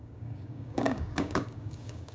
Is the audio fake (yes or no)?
yes